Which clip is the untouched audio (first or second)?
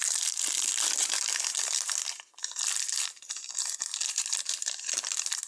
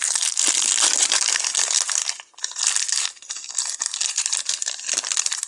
second